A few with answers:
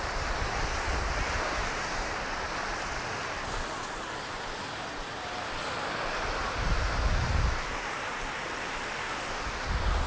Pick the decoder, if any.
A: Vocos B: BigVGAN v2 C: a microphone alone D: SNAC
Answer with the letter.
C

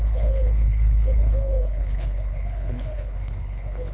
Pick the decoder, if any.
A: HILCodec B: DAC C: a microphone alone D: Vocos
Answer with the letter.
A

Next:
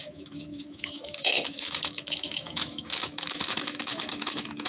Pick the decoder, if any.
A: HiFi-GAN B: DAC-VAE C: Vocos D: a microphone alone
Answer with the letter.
B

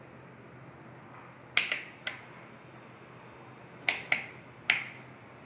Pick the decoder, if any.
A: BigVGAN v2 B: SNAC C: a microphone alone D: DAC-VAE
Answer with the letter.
C